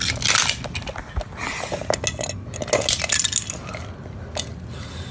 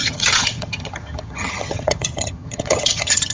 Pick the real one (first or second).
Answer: first